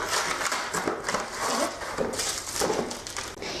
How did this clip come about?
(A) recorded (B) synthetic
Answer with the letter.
A